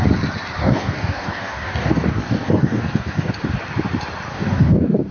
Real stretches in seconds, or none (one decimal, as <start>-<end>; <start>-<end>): 0.0-0.6; 3.3-4.3